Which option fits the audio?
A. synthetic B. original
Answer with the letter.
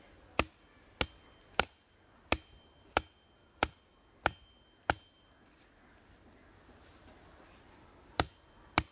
B